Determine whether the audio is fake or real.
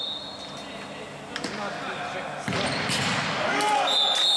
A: real